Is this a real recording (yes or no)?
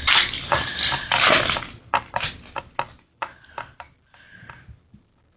yes